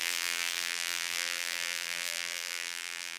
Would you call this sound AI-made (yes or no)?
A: yes